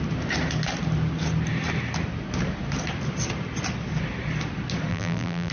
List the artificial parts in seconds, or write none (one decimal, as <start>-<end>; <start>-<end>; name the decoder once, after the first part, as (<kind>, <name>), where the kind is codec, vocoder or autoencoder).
4.9-5.5 (vocoder, BigVGAN v2)